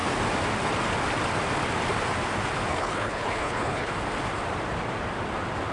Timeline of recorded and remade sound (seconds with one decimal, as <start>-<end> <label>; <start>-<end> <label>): 0.0-2.7 recorded; 2.7-3.9 remade; 3.9-5.7 recorded